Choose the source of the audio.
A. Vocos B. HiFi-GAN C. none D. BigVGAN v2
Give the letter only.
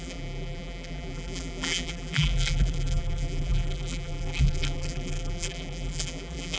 D